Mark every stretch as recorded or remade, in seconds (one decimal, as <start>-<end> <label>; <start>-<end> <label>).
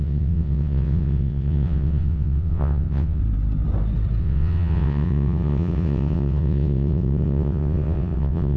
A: 0.0-3.2 remade; 3.2-4.2 recorded; 4.2-8.6 remade